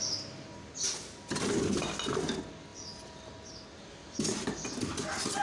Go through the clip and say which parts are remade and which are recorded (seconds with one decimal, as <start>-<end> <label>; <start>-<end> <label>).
0.0-5.4 recorded